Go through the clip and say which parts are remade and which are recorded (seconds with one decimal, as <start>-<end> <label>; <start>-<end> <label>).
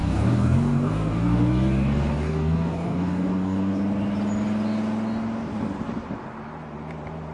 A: 0.0-3.8 remade; 3.8-7.3 recorded